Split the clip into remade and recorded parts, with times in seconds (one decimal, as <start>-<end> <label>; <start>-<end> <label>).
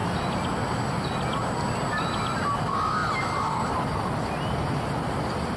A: 0.0-5.6 recorded